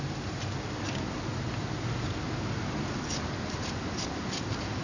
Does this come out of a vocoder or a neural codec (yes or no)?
no